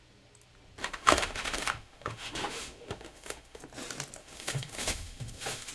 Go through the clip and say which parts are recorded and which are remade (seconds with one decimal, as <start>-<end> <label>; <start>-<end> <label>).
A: 0.0-0.8 recorded; 0.8-3.6 remade; 3.6-4.2 recorded; 4.2-5.7 remade